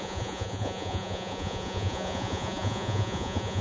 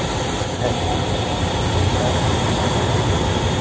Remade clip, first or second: first